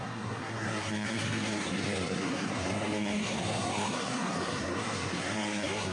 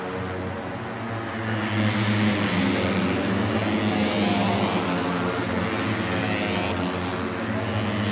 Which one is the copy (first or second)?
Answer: first